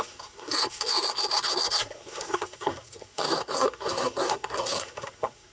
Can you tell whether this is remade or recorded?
remade